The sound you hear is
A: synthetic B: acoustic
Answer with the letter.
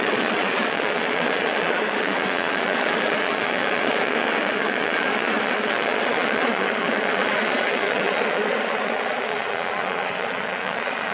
A